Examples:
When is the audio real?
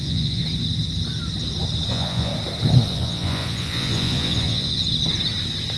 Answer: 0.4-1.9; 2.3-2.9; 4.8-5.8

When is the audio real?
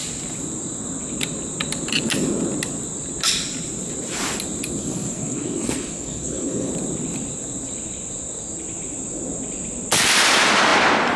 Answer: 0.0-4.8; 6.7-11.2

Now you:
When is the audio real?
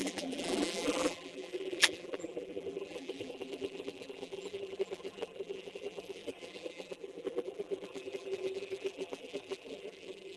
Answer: none